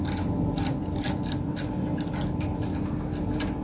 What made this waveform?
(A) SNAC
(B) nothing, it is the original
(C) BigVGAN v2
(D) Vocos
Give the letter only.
B